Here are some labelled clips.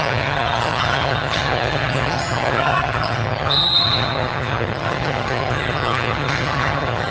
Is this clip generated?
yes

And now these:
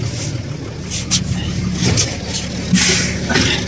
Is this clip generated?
no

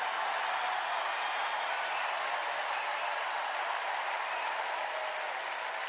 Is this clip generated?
no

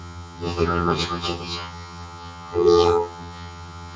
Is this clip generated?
yes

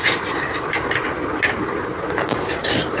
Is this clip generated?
no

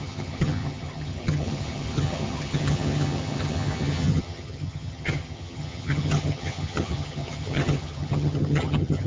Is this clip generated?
yes